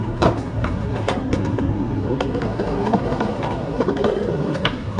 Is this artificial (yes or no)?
yes